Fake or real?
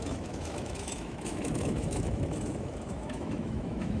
fake